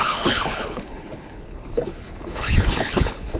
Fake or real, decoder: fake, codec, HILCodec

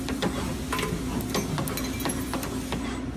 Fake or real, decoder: real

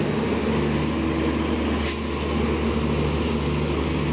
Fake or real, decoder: real